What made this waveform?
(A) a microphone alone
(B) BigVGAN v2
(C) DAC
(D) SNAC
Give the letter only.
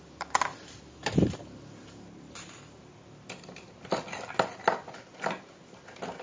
A